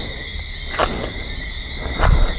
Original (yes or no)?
yes